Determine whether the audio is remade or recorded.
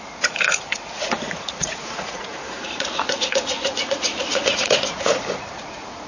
remade